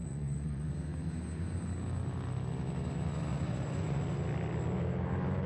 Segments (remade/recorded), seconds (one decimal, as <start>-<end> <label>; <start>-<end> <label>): 0.0-0.7 remade; 0.7-3.3 recorded; 3.3-4.0 remade; 4.0-5.5 recorded